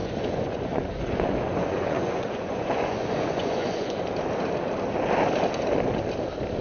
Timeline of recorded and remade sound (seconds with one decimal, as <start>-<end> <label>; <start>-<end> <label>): 0.0-4.0 remade; 4.0-6.6 recorded